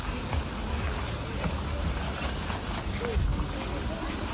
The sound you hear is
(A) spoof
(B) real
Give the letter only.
B